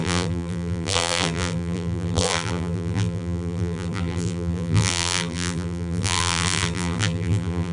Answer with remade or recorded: remade